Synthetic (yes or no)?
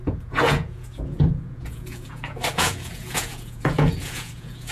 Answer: yes